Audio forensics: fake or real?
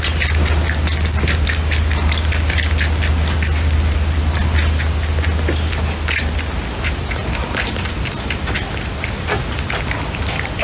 real